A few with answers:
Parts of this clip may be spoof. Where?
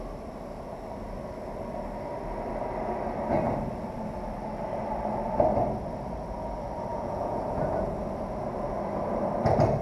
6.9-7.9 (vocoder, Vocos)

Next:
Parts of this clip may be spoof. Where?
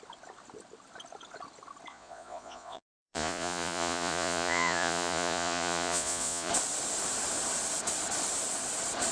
1.9-6.5 (vocoder, Vocos)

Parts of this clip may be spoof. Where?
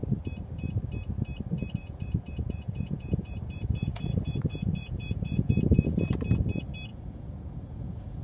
1.8-5.5 (vocoder, Vocos); 6.9-8.2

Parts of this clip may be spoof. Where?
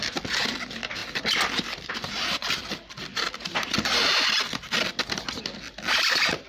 none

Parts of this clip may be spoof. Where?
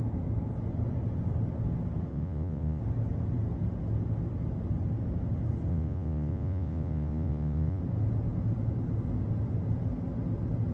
2.1-2.8 (vocoder, Vocos); 5.7-7.8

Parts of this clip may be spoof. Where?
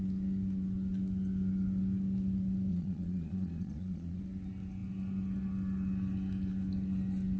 2.7-4.2 (vocoder, Vocos)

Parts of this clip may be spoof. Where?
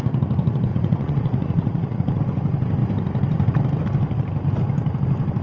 0.7-2.2 (vocoder, Vocos)